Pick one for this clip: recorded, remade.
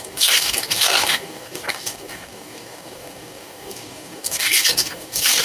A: remade